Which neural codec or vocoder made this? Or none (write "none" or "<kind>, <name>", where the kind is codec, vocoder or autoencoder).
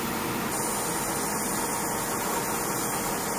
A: none